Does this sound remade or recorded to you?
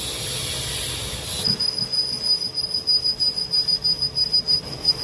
recorded